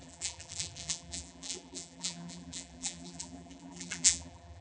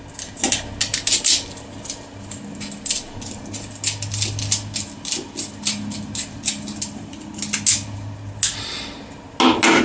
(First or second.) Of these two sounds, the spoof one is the first